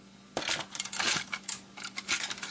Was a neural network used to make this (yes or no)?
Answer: no